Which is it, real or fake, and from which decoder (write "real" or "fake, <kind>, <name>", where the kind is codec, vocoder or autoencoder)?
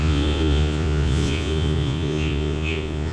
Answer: fake, vocoder, Vocos